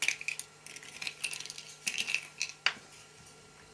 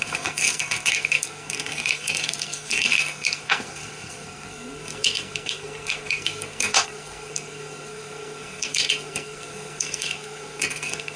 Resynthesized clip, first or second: second